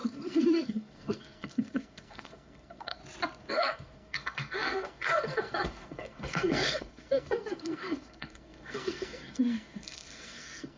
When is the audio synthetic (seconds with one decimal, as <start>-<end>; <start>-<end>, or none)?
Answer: 0.0-3.0; 3.5-10.8